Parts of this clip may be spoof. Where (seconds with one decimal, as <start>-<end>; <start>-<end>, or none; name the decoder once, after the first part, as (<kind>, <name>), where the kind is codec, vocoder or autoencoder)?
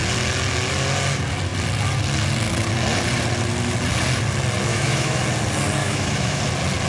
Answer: 4.7-5.2 (autoencoder, DAC-VAE); 5.8-6.4